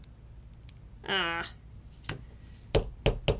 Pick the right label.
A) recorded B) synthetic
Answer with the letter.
A